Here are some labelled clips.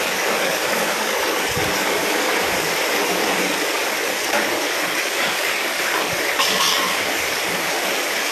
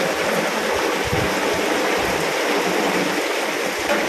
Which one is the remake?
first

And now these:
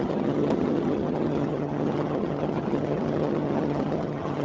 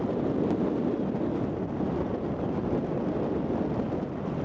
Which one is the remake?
first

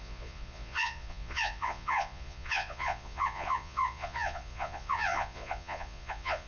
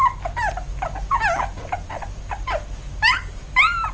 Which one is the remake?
first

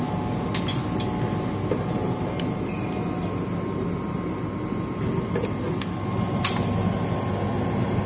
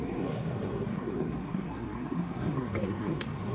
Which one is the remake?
second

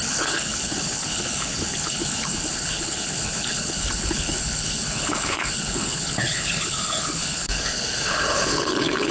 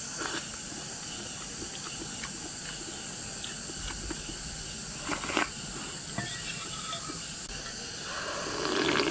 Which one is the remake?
first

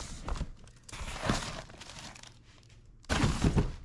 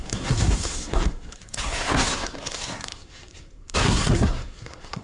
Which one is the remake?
second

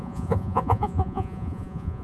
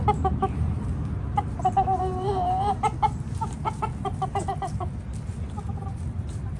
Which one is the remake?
first